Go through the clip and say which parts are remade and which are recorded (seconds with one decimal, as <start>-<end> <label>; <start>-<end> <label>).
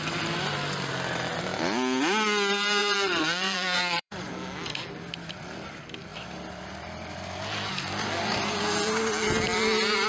0.0-2.8 recorded; 2.8-4.3 remade; 4.3-10.1 recorded